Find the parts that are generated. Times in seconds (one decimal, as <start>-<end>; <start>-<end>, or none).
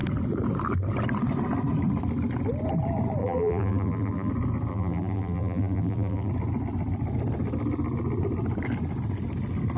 3.2-4.3; 4.7-6.3